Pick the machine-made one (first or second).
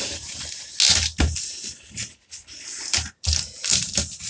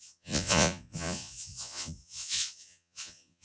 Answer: second